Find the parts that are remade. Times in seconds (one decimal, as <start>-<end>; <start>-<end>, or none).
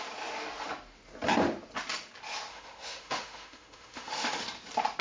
2.5-4.4